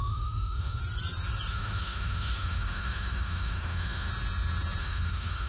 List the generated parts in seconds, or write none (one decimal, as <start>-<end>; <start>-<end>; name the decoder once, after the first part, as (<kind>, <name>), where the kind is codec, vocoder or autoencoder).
0.0-0.8 (autoencoder, DAC-VAE); 1.5-4.1; 4.8-5.5